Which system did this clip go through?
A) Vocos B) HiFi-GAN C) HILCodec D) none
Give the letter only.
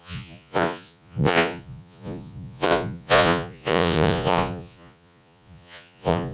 A